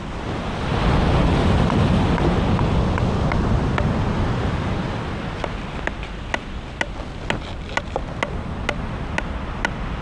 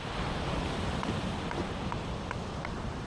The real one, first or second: first